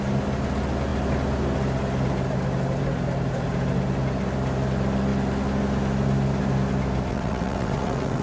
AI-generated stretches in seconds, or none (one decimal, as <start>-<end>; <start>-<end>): 7.1-8.2